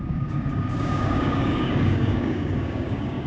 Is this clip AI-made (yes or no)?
yes